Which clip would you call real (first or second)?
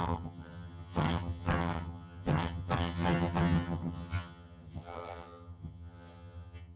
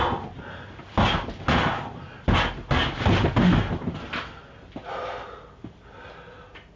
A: second